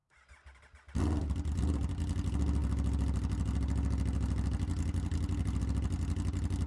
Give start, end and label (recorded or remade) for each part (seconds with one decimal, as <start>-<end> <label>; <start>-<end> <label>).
0.0-6.7 recorded